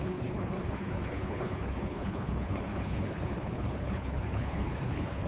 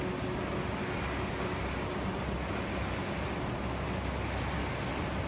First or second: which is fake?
first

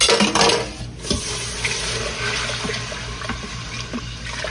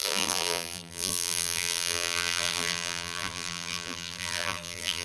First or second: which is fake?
second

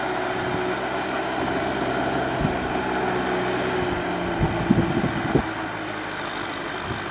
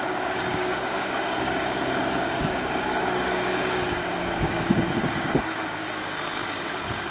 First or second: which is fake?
second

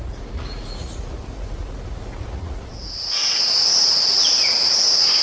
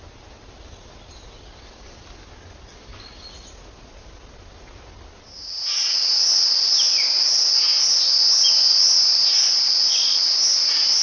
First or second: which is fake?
first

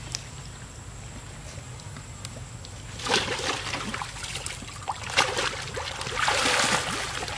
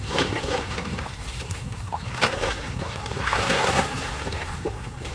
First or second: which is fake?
second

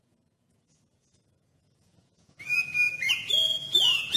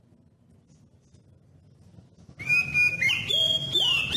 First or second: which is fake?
first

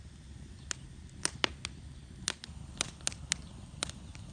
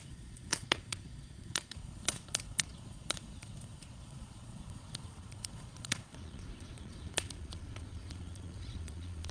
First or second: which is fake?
second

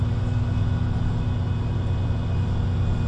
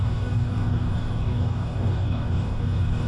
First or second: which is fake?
second